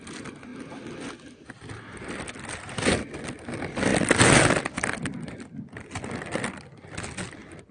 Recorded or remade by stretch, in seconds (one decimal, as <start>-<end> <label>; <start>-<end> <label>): 0.0-7.7 recorded